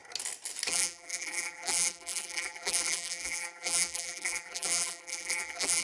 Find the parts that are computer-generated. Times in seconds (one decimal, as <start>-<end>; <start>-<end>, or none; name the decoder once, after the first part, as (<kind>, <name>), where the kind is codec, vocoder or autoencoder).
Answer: 0.7-5.8 (vocoder, BigVGAN v2)